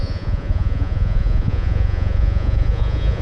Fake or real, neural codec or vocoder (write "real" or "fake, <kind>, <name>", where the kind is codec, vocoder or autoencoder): fake, vocoder, Vocos